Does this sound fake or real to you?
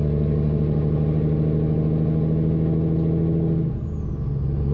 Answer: real